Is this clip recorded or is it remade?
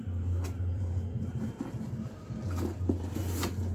recorded